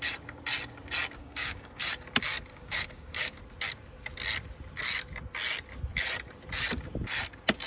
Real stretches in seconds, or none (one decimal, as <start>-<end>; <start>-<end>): 0.0-1.2; 1.9-2.5; 3.4-7.7